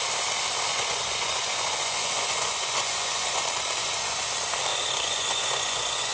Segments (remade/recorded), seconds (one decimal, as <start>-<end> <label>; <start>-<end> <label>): 0.0-0.7 recorded; 0.7-3.4 remade; 3.4-3.8 recorded; 3.8-4.3 remade; 4.3-4.7 recorded; 4.7-6.1 remade